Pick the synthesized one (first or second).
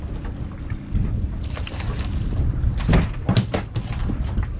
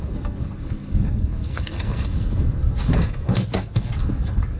second